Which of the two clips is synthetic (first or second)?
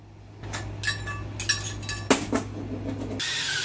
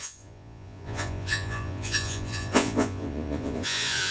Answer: second